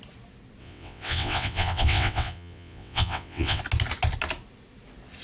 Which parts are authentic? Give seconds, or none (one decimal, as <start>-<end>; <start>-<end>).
0.0-0.6; 3.6-5.2